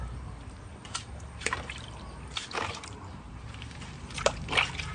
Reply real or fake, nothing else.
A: fake